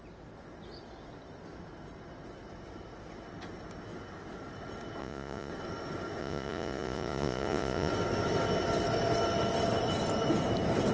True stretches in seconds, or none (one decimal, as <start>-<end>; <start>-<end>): 0.0-5.0; 5.5-6.2; 7.9-10.9